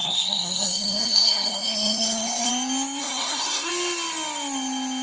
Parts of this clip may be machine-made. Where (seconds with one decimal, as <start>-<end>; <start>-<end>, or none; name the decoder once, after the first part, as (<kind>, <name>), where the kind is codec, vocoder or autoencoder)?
0.0-2.5 (codec, SNAC); 3.0-3.7